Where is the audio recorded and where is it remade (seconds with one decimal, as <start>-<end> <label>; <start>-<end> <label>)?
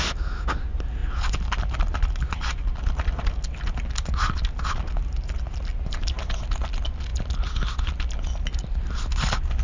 0.0-9.6 recorded